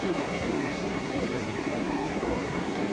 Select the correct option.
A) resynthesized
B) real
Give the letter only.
A